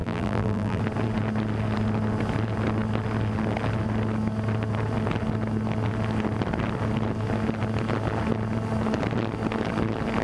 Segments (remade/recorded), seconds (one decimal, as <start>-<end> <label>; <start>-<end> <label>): 0.0-0.8 remade; 0.8-10.2 recorded

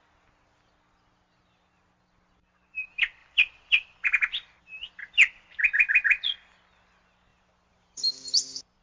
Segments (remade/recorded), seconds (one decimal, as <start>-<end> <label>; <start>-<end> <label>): 0.0-3.2 recorded; 3.2-5.6 remade; 5.6-7.3 recorded; 7.3-8.8 remade

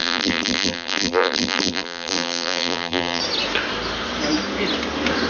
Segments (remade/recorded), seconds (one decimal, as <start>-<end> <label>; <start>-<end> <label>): 0.0-3.2 remade; 3.2-5.3 recorded

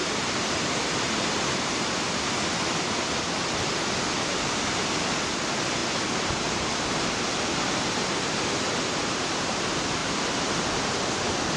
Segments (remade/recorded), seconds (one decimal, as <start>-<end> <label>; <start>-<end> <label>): 0.0-2.3 remade; 2.3-9.0 recorded; 9.0-9.5 remade; 9.5-10.0 recorded; 10.0-10.5 remade; 10.5-11.6 recorded

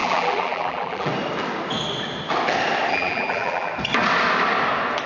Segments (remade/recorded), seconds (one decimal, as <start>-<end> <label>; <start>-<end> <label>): 0.0-1.1 remade; 1.1-2.9 recorded; 2.9-3.7 remade; 3.7-5.1 recorded

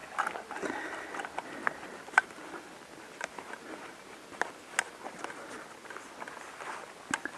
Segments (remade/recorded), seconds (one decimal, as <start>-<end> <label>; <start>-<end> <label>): 0.0-7.4 recorded